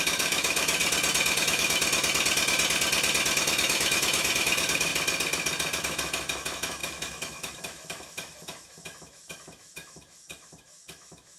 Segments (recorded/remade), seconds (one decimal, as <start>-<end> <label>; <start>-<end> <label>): 0.0-0.8 remade; 0.8-1.4 recorded; 1.4-1.8 remade; 1.8-3.4 recorded; 3.4-4.9 remade; 4.9-5.8 recorded; 5.8-11.4 remade